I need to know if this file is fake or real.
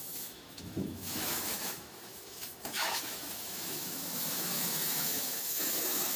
fake